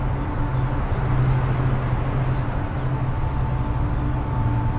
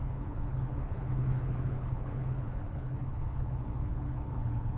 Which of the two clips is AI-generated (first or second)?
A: second